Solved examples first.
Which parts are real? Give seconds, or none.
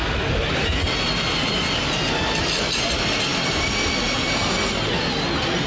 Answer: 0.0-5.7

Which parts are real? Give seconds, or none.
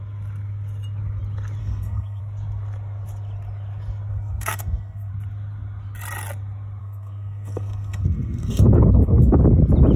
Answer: 0.0-1.6; 2.2-4.1; 5.1-6.8; 9.4-10.0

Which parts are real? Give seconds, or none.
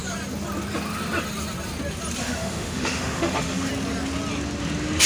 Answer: 0.0-2.2; 3.7-5.1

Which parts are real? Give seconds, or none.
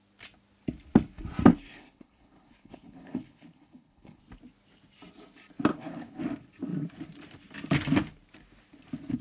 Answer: 0.0-1.5; 4.2-5.7; 6.2-9.2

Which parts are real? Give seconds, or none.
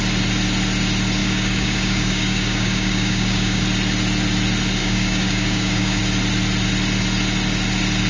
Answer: 0.0-1.2; 3.6-4.8; 6.0-8.1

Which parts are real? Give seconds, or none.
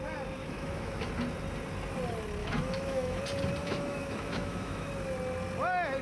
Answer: 0.0-0.4; 1.1-2.4; 3.2-3.6; 4.9-6.0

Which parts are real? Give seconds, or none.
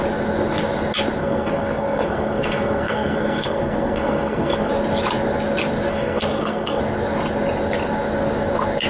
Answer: 0.0-1.2; 4.7-5.9; 6.8-8.9